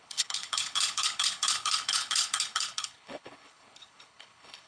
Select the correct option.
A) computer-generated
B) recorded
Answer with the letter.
A